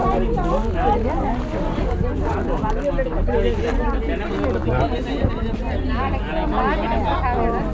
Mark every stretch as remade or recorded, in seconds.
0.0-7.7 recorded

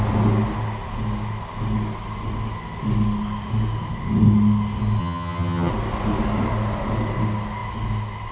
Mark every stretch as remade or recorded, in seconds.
0.0-5.0 recorded; 5.0-5.7 remade; 5.7-8.3 recorded

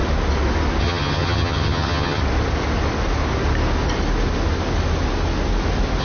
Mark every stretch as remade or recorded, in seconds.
0.0-0.8 recorded; 0.8-2.2 remade; 2.2-6.0 recorded

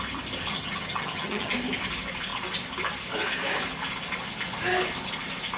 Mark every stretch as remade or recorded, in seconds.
0.0-0.5 recorded; 0.5-1.5 remade; 1.5-5.6 recorded

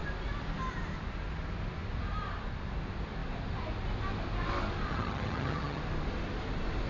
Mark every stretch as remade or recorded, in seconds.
0.0-4.9 recorded; 4.9-5.8 remade; 5.8-6.9 recorded

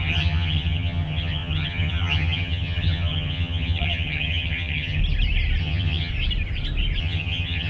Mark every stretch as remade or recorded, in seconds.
0.0-5.0 remade; 5.0-5.6 recorded; 5.6-6.1 remade; 6.1-7.0 recorded; 7.0-7.7 remade